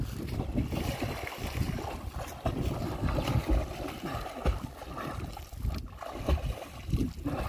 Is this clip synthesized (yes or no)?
no